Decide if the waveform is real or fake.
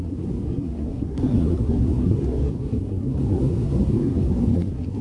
fake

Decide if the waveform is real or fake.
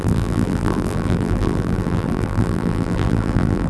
fake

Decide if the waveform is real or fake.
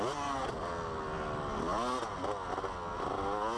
real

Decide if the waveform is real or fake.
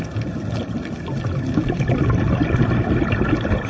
real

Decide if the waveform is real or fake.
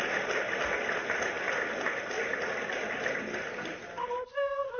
real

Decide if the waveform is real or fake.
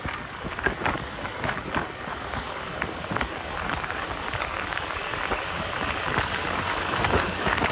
fake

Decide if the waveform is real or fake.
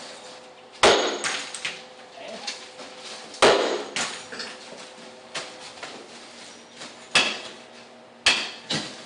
real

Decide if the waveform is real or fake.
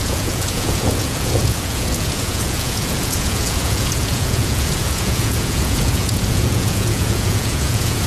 fake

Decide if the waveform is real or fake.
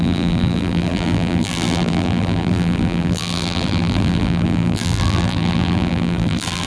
fake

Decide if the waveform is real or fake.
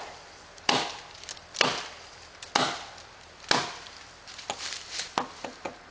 real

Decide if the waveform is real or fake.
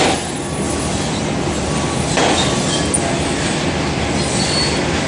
real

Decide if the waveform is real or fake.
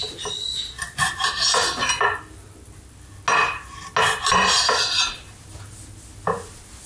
real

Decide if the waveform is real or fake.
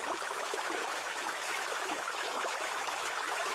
fake